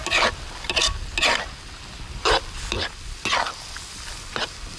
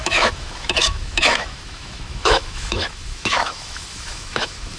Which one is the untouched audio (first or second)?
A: first